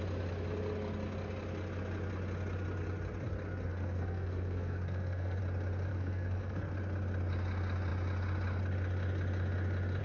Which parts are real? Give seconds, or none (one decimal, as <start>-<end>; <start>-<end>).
0.0-3.7; 5.4-5.9; 6.7-10.0